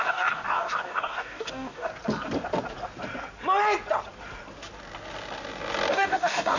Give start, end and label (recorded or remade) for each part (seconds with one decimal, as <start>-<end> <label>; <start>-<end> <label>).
0.0-1.9 remade; 1.9-5.9 recorded; 5.9-6.6 remade